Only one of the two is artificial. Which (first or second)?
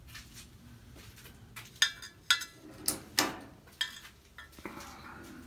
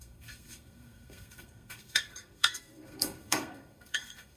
second